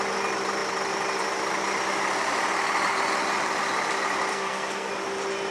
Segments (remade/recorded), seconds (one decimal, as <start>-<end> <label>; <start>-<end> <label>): 0.0-4.3 recorded; 4.3-4.9 remade; 4.9-5.5 recorded